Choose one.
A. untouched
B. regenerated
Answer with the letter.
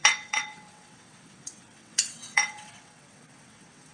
B